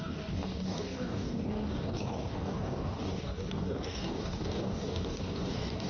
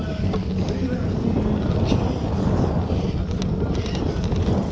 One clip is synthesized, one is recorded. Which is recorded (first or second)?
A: second